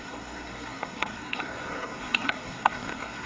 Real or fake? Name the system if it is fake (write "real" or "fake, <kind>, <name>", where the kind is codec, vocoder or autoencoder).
fake, codec, SNAC